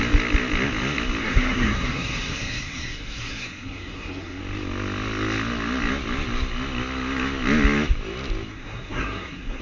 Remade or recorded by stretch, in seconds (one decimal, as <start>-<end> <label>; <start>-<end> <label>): 0.0-1.2 recorded; 1.2-4.4 remade; 4.4-8.5 recorded; 8.5-9.6 remade

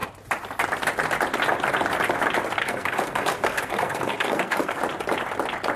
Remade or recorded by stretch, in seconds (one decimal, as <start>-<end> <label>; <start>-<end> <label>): 0.0-2.6 recorded; 2.6-4.8 remade; 4.8-5.8 recorded

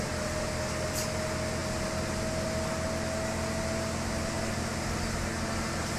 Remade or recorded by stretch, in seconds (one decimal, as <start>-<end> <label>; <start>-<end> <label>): 0.0-6.0 recorded

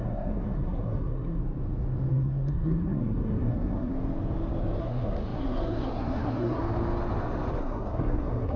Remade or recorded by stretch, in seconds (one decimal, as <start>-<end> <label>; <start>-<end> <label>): 0.0-1.4 remade; 1.4-2.1 recorded; 2.1-3.9 remade; 3.9-4.8 recorded; 4.8-6.6 remade; 6.6-7.6 recorded; 7.6-8.6 remade